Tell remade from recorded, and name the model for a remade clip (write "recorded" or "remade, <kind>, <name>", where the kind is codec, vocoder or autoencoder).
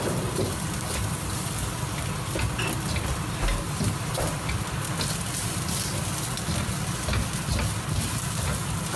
recorded